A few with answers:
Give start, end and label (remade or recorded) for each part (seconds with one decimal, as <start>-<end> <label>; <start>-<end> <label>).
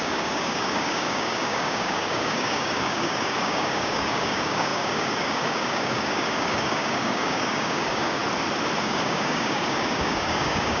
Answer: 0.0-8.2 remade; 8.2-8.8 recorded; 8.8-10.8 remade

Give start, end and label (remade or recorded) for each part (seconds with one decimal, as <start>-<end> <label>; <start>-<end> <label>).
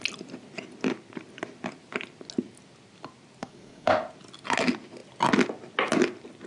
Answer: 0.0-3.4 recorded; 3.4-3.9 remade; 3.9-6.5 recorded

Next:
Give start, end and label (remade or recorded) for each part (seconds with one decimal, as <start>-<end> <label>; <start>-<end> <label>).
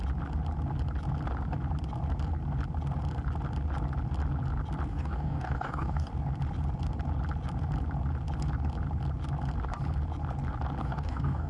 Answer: 0.0-4.9 recorded; 4.9-6.1 remade; 6.1-10.8 recorded; 10.8-11.5 remade